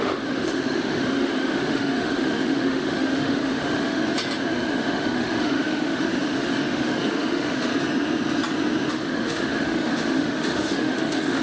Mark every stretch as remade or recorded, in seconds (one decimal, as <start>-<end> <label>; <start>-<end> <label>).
0.0-4.0 remade; 4.0-4.5 recorded; 4.5-7.7 remade; 7.7-8.9 recorded; 8.9-11.4 remade